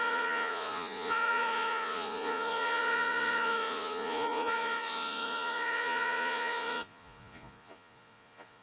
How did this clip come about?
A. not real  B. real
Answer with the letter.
A